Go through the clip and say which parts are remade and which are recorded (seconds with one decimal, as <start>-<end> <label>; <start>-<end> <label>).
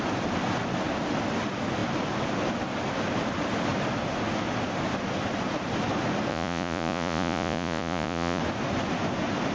0.0-6.3 recorded; 6.3-8.4 remade; 8.4-9.5 recorded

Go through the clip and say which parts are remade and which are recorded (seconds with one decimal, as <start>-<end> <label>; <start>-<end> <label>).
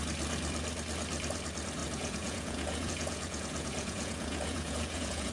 0.0-1.8 recorded; 1.8-5.3 remade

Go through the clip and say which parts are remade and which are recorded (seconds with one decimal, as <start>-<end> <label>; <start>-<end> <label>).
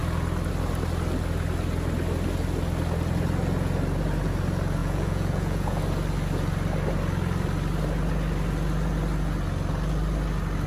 0.0-4.8 recorded; 4.8-5.8 remade; 5.8-10.7 recorded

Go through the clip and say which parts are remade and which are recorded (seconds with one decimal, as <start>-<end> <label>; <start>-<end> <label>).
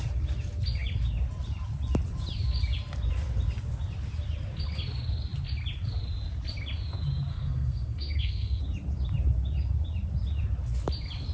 0.0-7.3 recorded; 7.3-8.6 remade; 8.6-11.3 recorded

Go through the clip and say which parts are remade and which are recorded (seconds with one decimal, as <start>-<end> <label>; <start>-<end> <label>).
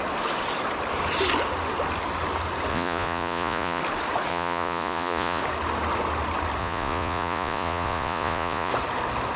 0.0-2.7 recorded; 2.7-3.8 remade; 3.8-4.3 recorded; 4.3-5.4 remade; 5.4-6.6 recorded; 6.6-8.7 remade; 8.7-9.4 recorded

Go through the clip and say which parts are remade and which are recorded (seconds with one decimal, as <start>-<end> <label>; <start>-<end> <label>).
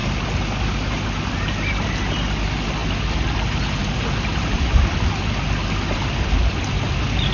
0.0-7.3 recorded